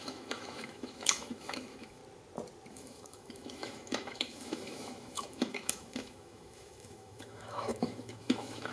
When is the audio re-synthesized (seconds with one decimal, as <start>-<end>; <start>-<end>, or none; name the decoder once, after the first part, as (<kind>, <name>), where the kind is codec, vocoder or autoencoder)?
0.0-2.0 (autoencoder, DAC-VAE); 2.7-8.7